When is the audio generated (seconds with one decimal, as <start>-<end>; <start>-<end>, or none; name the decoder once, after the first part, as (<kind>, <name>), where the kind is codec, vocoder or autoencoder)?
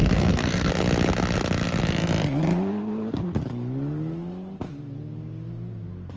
0.0-0.7 (codec, SNAC)